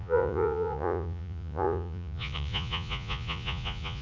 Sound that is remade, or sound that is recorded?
remade